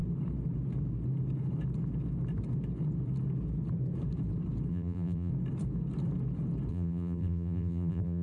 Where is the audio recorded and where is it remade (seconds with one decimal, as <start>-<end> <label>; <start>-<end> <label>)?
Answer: 0.0-4.7 recorded; 4.7-5.3 remade; 5.3-6.7 recorded; 6.7-8.2 remade